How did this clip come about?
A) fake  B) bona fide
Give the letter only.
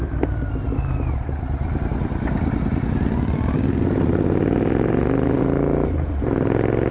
A